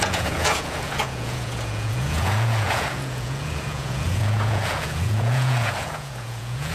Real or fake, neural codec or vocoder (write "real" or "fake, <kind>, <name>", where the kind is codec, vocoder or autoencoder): fake, vocoder, Vocos